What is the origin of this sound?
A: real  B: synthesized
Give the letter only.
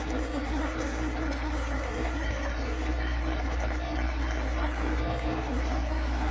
B